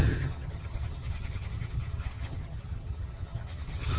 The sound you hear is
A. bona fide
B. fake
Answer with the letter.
B